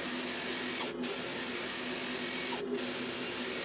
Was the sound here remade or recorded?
recorded